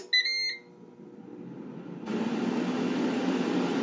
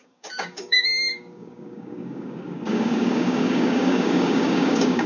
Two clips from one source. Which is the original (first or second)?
first